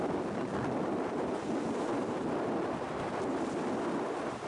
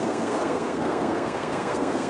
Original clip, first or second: first